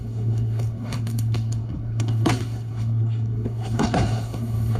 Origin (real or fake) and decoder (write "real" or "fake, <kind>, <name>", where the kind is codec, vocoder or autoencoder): fake, codec, SNAC